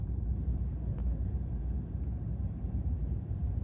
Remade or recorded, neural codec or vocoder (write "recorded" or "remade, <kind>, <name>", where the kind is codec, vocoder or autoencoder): remade, vocoder, BigVGAN v2